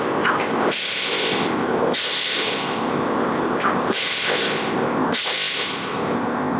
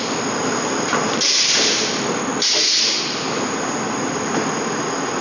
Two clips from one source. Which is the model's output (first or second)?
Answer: first